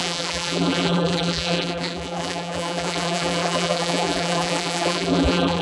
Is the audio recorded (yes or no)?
no